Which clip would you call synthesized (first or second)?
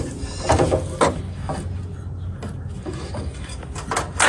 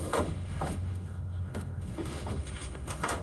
second